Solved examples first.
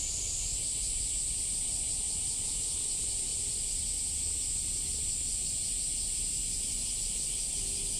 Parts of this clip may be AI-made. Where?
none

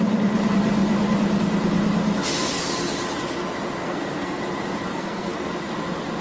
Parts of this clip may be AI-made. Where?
3.8-4.4; 4.9-5.5

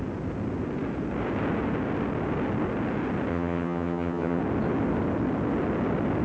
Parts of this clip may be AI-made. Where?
3.3-4.4

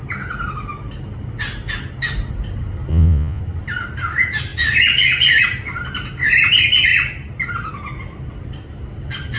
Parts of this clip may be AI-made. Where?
2.9-3.4

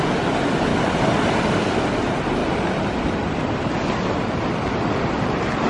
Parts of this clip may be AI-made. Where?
none

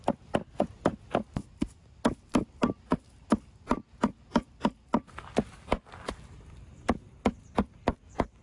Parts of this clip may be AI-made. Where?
none

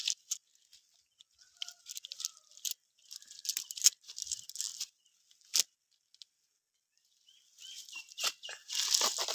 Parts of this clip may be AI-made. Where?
none

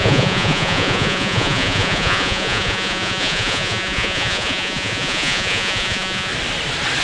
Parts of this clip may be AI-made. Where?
0.0-6.3